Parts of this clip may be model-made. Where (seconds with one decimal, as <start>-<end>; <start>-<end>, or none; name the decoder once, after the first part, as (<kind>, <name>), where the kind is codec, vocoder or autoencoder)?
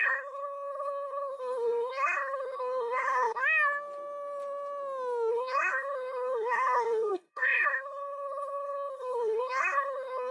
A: 0.0-3.4 (codec, SNAC); 5.3-10.3